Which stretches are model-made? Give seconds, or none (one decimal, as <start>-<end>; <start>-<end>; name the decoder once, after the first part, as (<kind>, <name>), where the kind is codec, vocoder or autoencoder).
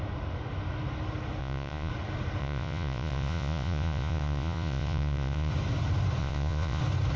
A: 1.4-1.9 (vocoder, Vocos); 2.4-5.5; 6.2-6.8